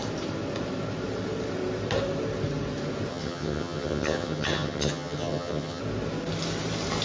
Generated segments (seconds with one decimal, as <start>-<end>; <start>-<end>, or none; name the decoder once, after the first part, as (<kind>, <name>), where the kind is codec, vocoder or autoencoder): 3.1-5.8 (vocoder, HiFi-GAN)